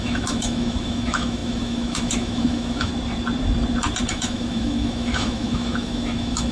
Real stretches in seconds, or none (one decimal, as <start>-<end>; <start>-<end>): 2.9-4.1